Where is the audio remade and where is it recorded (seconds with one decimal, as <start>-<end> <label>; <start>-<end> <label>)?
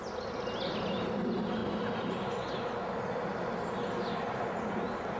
0.0-5.2 recorded